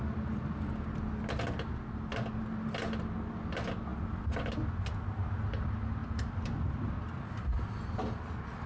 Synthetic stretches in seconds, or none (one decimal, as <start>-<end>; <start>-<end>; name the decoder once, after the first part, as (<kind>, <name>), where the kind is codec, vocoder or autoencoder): 3.9-4.5 (vocoder, BigVGAN v2); 6.0-7.2